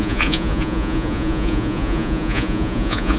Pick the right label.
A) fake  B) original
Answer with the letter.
A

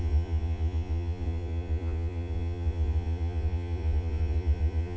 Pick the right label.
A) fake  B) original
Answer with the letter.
A